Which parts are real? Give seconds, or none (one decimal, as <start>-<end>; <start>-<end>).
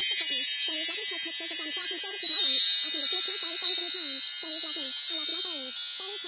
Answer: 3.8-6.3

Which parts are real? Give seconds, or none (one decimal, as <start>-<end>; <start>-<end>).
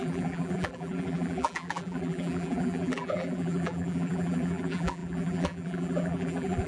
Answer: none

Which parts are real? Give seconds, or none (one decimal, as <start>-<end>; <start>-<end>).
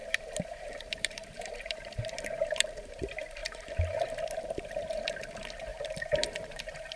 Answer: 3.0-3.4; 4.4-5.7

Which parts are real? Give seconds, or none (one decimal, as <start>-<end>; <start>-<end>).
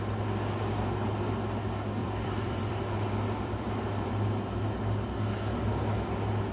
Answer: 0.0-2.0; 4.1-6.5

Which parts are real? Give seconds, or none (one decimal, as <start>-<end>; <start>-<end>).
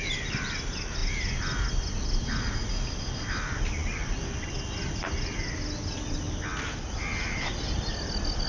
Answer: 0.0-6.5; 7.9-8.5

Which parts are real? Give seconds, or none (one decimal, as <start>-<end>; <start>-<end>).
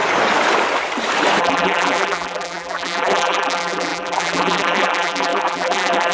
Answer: 0.0-1.4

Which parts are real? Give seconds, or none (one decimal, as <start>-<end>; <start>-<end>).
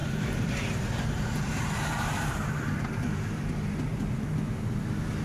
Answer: 1.6-3.9; 4.8-5.2